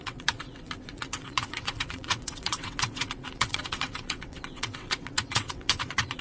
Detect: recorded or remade remade